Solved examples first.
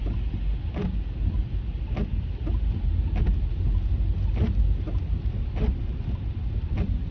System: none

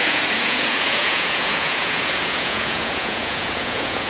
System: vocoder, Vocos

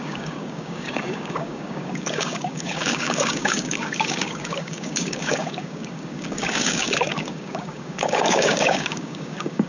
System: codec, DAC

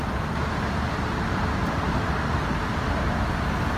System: none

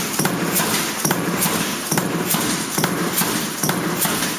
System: vocoder, BigVGAN v2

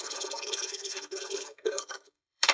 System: codec, SNAC